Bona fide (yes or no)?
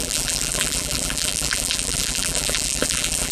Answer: no